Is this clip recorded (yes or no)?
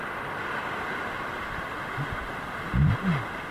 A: yes